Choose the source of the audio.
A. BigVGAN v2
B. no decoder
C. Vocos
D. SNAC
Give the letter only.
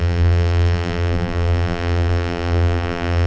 A